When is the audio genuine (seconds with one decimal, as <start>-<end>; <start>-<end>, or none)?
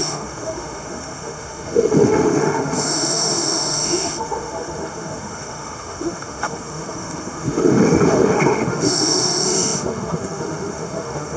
none